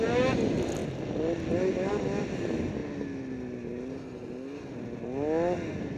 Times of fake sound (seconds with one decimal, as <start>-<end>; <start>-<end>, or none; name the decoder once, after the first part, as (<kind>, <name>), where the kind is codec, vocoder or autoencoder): none